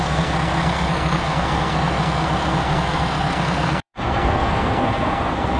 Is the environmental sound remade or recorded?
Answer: remade